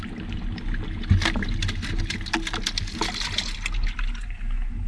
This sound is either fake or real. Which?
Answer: real